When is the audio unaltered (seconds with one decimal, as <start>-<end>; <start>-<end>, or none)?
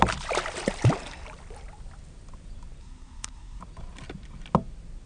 0.0-2.8; 3.6-5.1